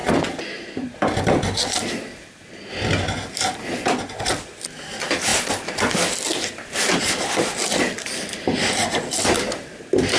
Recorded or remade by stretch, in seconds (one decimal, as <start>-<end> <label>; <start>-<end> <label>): 0.0-10.2 recorded